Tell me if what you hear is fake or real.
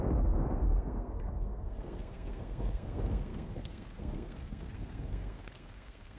fake